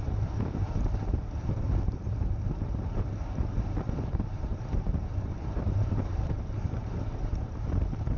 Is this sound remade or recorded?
remade